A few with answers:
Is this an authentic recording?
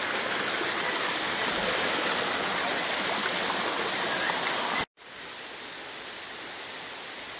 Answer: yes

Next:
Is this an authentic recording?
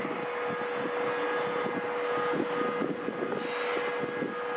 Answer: yes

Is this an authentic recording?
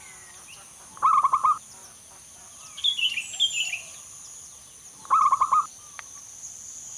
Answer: yes